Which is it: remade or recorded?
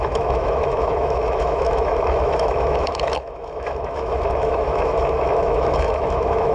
remade